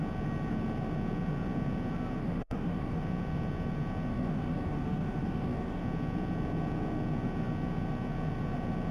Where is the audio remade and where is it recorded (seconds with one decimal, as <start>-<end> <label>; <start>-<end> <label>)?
0.0-2.2 recorded; 2.2-3.0 remade; 3.0-4.1 recorded; 4.1-5.8 remade; 5.8-8.9 recorded